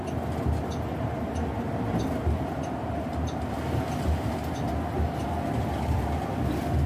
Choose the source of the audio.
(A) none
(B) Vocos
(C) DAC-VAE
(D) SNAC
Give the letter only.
A